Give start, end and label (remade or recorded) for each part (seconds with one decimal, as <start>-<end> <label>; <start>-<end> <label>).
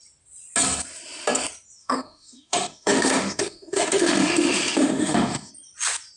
0.0-1.8 recorded; 1.8-5.5 remade; 5.5-6.2 recorded